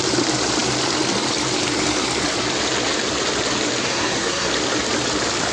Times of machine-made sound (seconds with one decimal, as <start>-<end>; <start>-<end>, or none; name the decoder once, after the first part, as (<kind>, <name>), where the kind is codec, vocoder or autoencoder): 3.8-4.5 (codec, SNAC)